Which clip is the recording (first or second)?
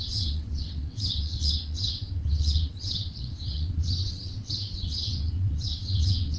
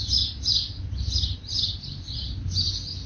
second